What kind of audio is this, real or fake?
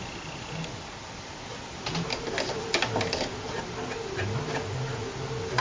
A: real